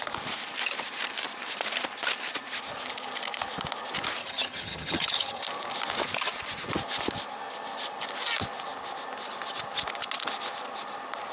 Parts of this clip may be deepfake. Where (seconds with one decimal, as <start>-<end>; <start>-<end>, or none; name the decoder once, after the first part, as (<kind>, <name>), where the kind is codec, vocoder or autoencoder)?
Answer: 4.2-5.4 (vocoder, HiFi-GAN)